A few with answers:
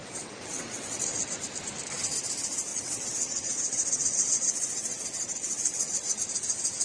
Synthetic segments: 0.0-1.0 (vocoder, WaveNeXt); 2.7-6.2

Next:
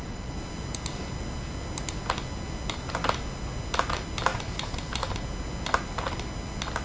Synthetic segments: none

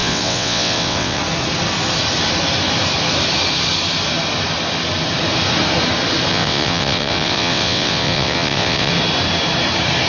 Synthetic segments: 0.0-1.2 (vocoder, WaveNeXt); 6.3-8.9